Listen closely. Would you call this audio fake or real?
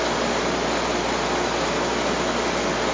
real